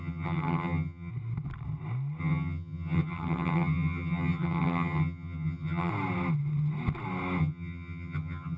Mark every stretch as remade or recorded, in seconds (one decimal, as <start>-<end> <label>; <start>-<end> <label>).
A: 0.0-1.1 remade; 1.1-2.2 recorded; 2.2-5.9 remade; 5.9-7.4 recorded; 7.4-8.6 remade